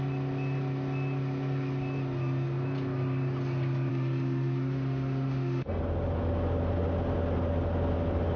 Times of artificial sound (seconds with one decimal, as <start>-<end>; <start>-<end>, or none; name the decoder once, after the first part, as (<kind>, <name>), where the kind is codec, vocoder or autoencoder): 3.9-5.8 (autoencoder, DAC-VAE)